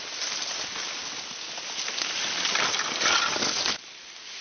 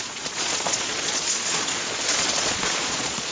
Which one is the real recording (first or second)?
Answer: first